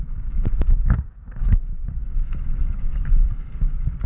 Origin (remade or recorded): remade